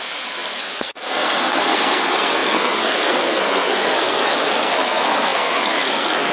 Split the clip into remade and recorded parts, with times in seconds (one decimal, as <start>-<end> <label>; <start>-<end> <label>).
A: 0.0-6.3 remade